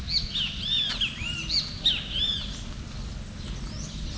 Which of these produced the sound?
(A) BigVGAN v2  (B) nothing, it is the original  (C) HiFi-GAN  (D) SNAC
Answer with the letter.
B